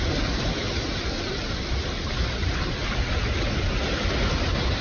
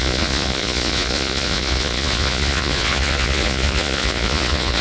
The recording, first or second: first